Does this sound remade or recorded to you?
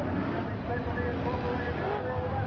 recorded